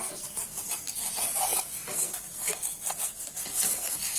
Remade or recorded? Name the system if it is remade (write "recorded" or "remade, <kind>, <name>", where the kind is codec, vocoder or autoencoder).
remade, codec, SNAC